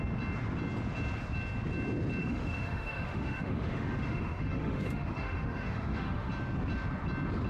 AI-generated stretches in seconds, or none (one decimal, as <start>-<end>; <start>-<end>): 2.2-6.3